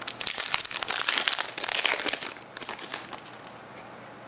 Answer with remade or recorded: recorded